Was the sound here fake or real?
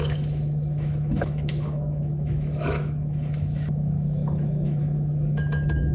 fake